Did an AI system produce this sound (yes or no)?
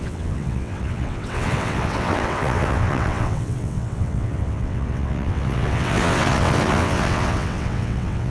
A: yes